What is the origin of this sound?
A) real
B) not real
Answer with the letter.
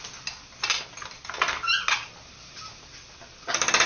A